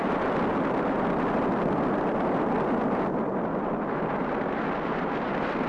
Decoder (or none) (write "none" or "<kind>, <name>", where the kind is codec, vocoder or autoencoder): none